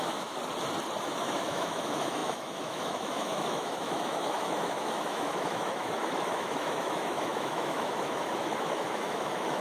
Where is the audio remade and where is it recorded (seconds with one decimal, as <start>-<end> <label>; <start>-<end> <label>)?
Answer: 0.0-0.4 remade; 0.4-1.0 recorded; 1.0-9.6 remade